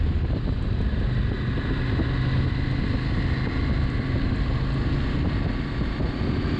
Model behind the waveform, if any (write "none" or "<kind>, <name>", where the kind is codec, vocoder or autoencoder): none